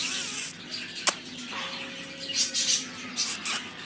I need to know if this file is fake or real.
real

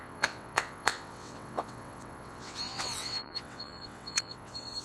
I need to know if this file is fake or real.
fake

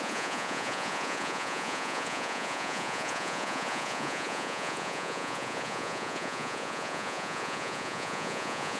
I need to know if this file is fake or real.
fake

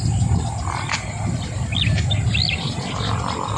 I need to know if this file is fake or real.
real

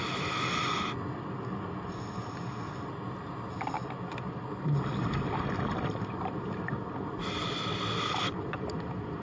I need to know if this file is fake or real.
real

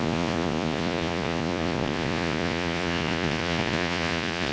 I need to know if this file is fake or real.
fake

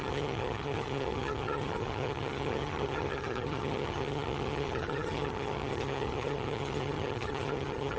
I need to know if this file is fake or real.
fake